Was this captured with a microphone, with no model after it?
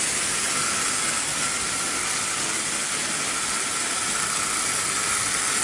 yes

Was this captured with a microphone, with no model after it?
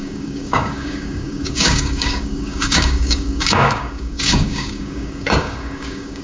no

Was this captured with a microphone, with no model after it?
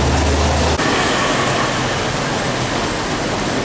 yes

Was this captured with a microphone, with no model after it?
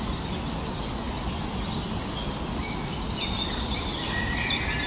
yes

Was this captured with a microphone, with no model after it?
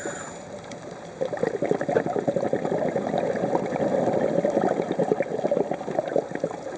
yes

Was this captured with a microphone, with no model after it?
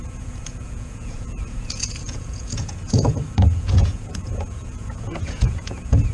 no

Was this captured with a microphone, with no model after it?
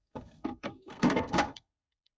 no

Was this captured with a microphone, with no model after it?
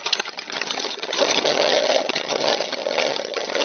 no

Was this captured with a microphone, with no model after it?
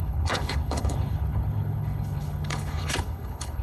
no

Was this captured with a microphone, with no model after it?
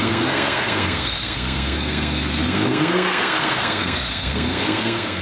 no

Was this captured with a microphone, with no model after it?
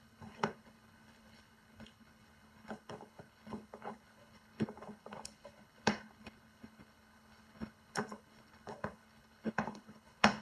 no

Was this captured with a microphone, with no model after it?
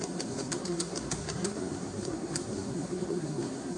no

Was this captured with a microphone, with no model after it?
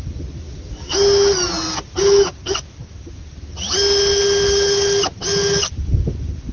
yes